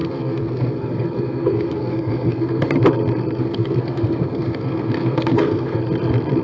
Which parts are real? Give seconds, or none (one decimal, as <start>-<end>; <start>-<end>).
2.7-3.4; 5.8-6.4